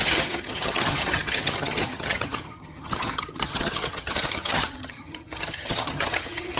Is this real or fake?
fake